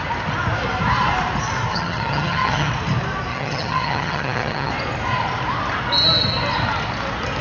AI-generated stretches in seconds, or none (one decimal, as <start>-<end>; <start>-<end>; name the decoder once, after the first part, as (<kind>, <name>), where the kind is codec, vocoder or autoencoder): 1.7-2.7 (vocoder, HiFi-GAN); 3.3-4.7